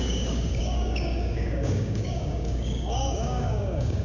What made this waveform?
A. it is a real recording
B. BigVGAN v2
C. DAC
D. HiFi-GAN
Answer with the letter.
C